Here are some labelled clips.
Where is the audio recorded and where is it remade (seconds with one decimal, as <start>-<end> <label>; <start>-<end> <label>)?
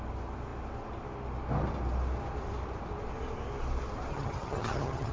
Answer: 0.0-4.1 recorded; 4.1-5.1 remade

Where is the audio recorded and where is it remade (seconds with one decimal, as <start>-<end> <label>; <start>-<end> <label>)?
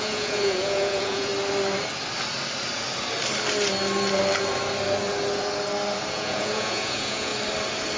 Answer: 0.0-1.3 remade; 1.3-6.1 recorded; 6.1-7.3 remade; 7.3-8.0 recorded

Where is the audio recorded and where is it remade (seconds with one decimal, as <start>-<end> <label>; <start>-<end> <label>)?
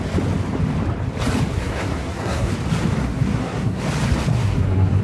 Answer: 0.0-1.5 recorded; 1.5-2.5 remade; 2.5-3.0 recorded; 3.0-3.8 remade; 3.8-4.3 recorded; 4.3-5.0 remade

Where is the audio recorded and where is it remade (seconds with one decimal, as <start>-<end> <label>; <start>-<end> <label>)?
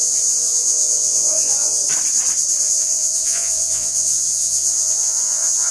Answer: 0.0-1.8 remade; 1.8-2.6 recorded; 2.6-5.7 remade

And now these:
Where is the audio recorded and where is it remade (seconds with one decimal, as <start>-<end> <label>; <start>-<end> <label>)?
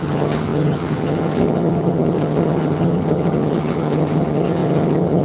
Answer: 0.0-5.2 remade